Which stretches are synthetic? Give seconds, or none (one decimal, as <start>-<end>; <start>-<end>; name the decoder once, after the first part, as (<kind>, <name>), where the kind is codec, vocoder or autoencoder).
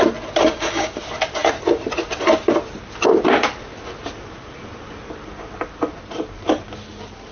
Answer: 0.4-1.0 (codec, DAC)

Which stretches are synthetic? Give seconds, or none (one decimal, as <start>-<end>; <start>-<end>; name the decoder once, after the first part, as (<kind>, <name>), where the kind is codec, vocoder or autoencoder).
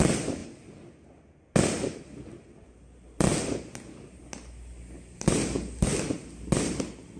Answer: none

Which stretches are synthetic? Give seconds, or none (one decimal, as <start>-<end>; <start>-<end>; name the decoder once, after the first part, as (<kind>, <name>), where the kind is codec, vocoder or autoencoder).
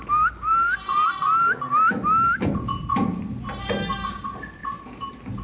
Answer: none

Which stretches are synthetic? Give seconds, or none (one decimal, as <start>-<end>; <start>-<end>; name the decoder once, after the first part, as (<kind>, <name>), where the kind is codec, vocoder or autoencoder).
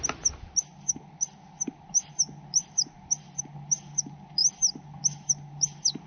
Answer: none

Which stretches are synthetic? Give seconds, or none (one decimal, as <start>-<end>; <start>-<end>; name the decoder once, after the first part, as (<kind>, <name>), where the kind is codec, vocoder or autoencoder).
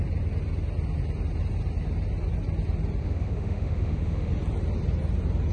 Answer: 3.0-4.3 (autoencoder, DAC-VAE)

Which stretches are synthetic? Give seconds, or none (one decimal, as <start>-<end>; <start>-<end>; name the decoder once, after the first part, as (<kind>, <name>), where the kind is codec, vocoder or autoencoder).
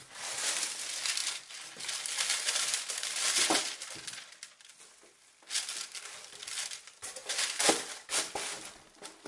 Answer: none